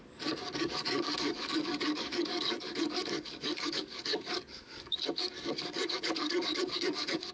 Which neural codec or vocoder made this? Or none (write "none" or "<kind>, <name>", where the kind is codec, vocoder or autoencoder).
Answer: codec, DAC